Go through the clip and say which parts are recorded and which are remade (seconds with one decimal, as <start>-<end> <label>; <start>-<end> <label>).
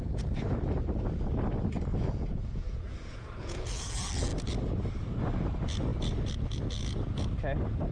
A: 0.0-1.9 recorded; 1.9-3.9 remade; 3.9-7.9 recorded